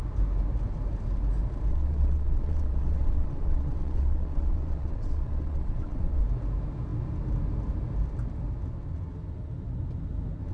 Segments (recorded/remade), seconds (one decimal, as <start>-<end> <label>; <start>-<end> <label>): 0.0-1.7 recorded; 1.7-6.2 remade; 6.2-10.5 recorded